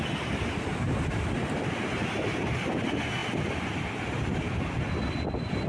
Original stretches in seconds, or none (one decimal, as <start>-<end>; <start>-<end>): 0.0-5.7